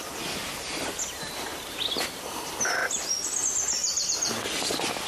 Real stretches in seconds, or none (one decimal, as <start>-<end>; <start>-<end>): 0.0-3.8; 4.3-5.1